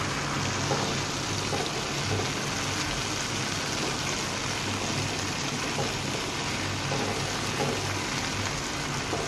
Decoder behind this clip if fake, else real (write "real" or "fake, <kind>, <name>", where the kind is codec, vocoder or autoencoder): real